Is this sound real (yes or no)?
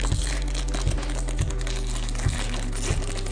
yes